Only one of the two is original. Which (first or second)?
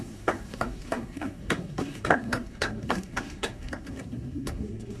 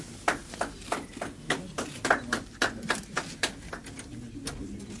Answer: second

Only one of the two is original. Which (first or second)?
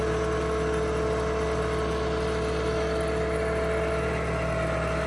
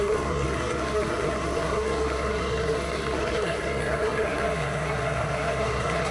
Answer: first